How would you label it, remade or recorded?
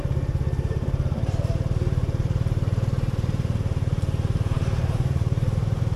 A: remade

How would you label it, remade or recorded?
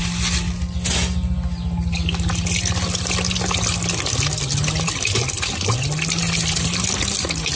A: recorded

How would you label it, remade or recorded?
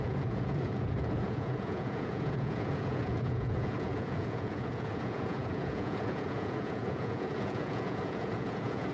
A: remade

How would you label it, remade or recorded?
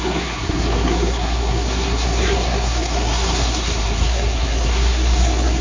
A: remade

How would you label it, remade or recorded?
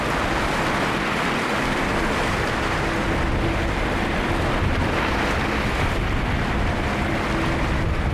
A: recorded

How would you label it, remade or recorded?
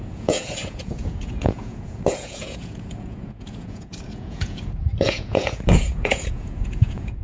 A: remade